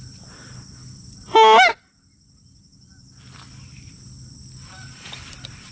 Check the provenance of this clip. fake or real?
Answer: real